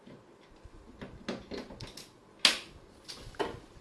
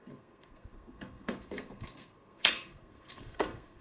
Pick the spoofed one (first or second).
second